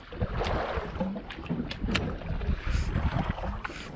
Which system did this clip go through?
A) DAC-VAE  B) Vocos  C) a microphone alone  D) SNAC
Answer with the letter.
C